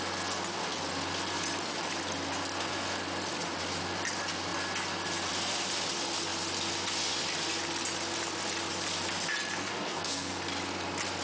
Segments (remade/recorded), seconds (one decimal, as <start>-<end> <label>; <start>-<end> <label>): 0.0-9.6 recorded; 9.6-10.3 remade; 10.3-11.2 recorded